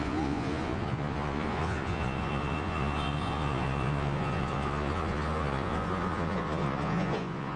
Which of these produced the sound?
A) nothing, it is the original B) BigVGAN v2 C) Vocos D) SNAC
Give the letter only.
C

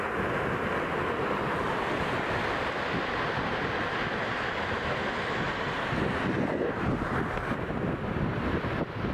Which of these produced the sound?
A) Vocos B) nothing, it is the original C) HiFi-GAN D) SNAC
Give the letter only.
B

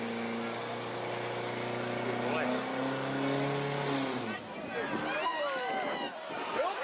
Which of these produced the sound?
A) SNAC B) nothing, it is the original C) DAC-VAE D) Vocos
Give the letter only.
B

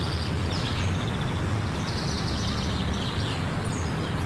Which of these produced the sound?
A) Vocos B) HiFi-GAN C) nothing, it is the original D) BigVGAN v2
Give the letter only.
C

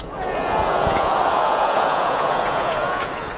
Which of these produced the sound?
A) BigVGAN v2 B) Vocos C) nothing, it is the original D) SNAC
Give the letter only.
B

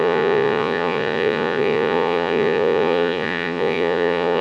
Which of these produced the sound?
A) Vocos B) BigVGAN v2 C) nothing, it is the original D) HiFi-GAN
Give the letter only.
A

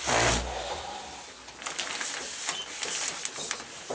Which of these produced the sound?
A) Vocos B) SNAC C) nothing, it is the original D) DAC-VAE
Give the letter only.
C